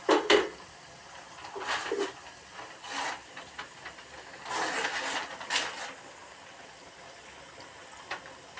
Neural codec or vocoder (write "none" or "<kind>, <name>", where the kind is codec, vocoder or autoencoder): none